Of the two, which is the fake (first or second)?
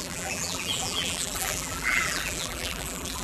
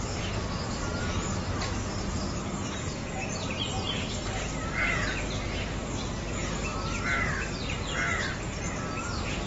first